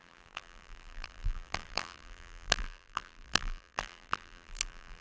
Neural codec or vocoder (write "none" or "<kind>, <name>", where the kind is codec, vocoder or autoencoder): vocoder, BigVGAN v2